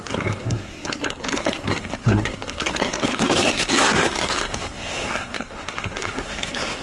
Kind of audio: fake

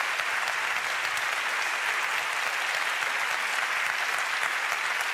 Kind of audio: real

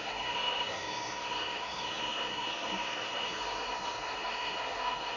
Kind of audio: fake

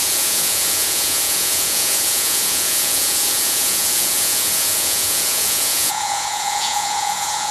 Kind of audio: fake